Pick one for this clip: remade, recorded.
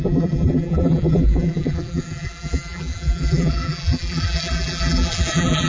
remade